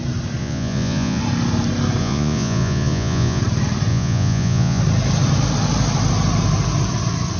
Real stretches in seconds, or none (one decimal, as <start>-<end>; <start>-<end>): 0.0-0.4; 1.2-2.0; 3.4-3.9; 4.8-7.4

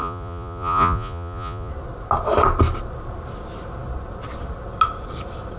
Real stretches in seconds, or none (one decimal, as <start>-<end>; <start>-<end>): 1.7-5.6